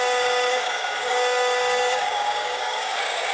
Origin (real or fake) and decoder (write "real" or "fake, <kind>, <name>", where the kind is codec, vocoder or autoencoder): fake, codec, DAC